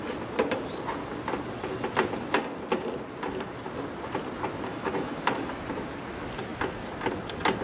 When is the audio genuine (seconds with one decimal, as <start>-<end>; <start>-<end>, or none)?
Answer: 0.0-4.7; 5.4-7.6